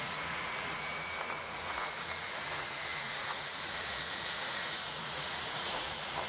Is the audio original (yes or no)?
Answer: no